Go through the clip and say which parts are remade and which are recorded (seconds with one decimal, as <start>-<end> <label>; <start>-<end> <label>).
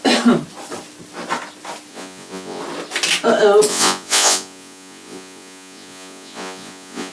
0.0-1.9 recorded; 1.9-2.6 remade; 2.6-3.7 recorded; 3.7-7.1 remade